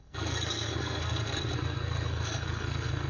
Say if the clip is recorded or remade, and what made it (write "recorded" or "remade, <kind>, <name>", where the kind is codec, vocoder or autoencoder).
remade, codec, SNAC